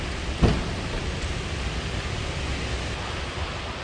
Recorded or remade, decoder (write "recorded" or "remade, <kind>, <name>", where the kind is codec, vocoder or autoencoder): recorded